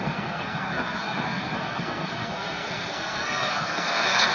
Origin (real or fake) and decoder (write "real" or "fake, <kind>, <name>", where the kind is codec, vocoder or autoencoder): fake, codec, SNAC